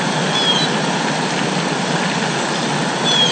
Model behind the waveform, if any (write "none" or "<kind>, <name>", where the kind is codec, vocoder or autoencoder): none